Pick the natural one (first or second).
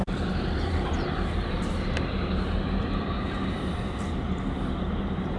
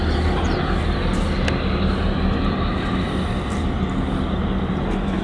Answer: second